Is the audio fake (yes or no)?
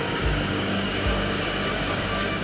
yes